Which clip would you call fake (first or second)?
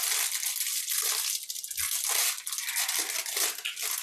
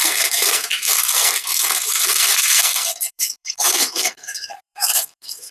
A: second